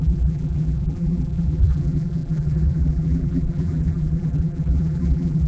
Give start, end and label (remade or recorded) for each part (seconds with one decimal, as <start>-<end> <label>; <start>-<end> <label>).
0.0-5.5 remade